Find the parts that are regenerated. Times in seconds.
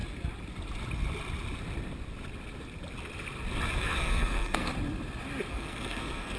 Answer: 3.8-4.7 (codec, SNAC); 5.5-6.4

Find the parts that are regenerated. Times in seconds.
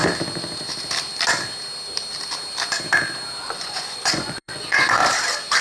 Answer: 3.4-5.0 (vocoder, Vocos)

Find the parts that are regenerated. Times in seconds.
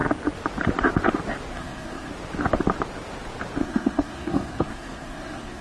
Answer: 1.5-2.1 (codec, SNAC); 3.6-5.6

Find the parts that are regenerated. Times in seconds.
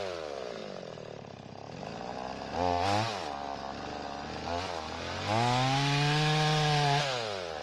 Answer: none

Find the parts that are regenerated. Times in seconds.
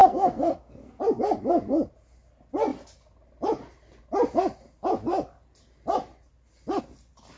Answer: 0.0-1.0 (codec, SNAC)